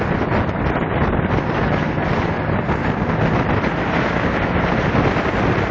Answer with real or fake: real